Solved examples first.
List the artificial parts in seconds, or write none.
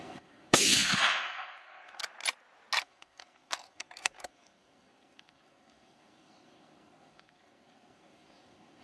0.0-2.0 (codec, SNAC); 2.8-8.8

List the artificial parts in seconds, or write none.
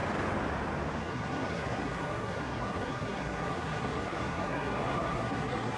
1.0-5.8 (codec, SNAC)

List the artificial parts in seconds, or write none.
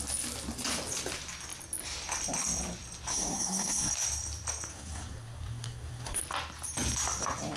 3.1-3.9 (codec, SNAC); 4.7-6.2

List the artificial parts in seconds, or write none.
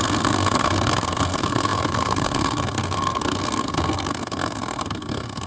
0.0-5.5 (codec, SNAC)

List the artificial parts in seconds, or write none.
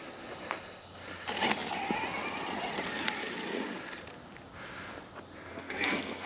5.5-6.3 (codec, SNAC)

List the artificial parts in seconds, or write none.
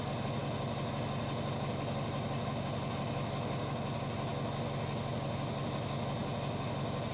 none